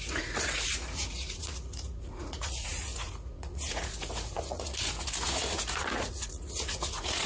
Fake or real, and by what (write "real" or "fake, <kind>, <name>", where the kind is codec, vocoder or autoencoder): fake, vocoder, Vocos